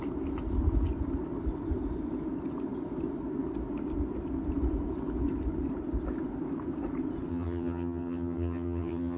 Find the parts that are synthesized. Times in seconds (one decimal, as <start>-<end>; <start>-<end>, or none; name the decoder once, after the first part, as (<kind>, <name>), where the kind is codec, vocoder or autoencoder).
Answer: 7.3-9.2 (vocoder, HiFi-GAN)